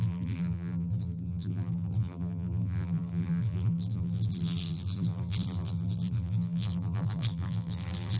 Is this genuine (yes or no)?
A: no